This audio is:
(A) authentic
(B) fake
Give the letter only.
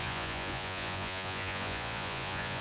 B